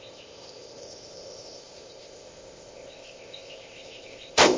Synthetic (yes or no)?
yes